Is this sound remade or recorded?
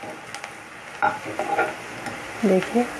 recorded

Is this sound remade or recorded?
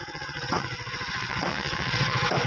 remade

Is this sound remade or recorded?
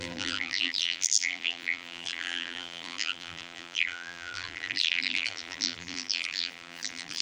remade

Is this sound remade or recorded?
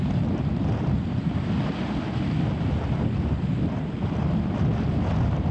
recorded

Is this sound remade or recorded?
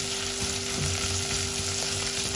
recorded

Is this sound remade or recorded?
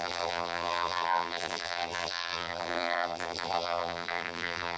remade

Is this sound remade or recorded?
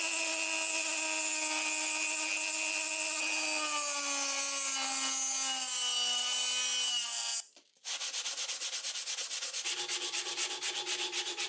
recorded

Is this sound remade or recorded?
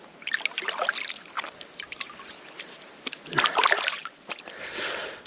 recorded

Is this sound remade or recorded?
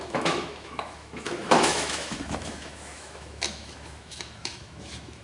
remade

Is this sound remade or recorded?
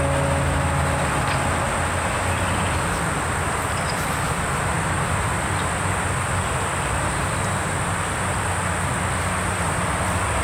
recorded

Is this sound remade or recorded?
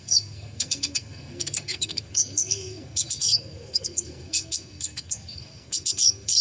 remade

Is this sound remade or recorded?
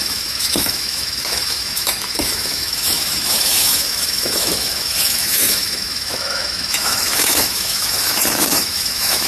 remade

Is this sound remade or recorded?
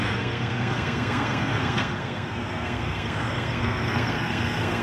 remade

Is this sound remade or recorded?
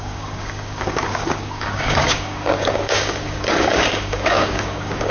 remade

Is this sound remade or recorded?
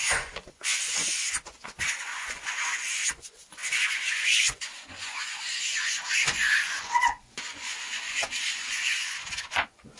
remade